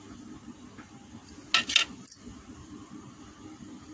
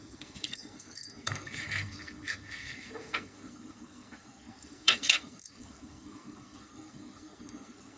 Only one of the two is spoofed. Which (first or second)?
second